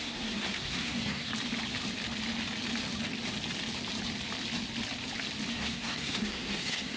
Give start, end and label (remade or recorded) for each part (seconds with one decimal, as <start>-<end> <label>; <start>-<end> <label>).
0.0-1.3 remade; 1.3-5.5 recorded; 5.5-7.0 remade